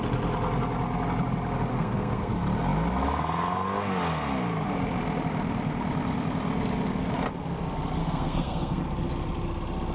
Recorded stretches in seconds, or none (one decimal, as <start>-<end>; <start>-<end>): 0.0-1.7; 2.3-8.0; 8.8-9.9